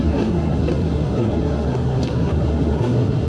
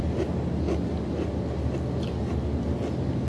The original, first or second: second